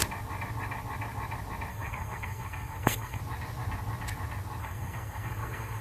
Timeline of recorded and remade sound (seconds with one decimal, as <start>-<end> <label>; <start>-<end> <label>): 0.0-1.7 recorded; 1.7-3.2 remade; 3.2-4.6 recorded; 4.6-5.8 remade